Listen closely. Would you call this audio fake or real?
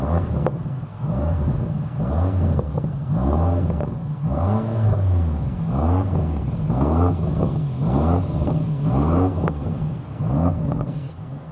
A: fake